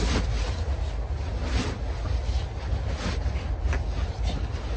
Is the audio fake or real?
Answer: real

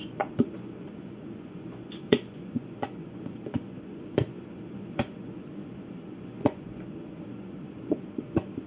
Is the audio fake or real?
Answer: fake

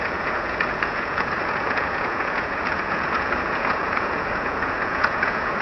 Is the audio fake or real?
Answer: fake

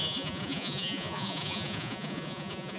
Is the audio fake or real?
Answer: fake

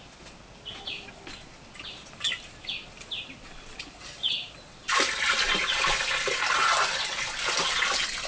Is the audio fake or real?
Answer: real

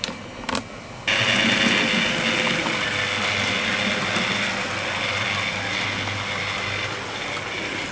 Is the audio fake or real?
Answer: real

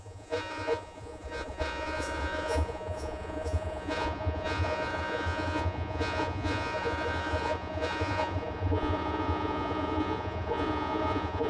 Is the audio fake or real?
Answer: fake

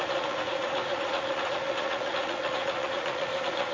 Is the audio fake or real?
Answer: fake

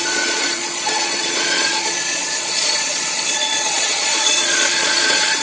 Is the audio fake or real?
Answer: fake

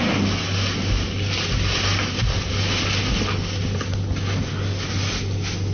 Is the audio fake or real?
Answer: real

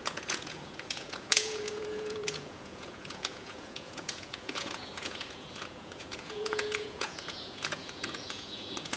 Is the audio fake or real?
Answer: fake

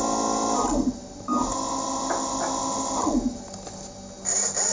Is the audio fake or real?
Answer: real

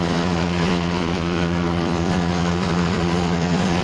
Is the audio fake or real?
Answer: fake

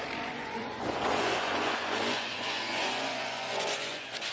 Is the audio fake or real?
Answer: fake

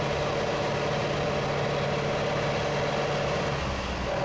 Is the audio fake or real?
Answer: real